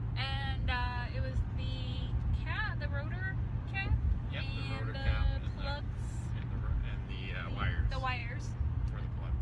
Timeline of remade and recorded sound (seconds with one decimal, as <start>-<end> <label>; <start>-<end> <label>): 0.0-9.4 recorded